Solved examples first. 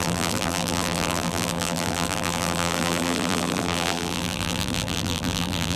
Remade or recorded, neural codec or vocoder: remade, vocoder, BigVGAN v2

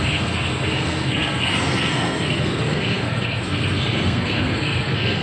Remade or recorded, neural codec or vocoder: remade, codec, SNAC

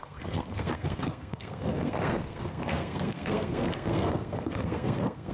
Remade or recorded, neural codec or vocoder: remade, codec, SNAC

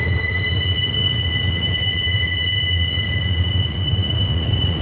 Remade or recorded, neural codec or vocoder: remade, vocoder, Vocos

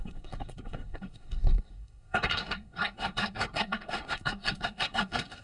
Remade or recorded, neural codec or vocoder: remade, codec, SNAC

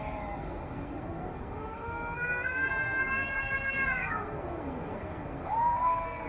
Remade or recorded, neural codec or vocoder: remade, codec, SNAC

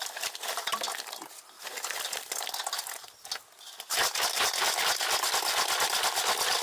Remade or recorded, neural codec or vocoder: recorded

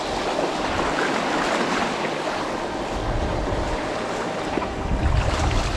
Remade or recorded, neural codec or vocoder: recorded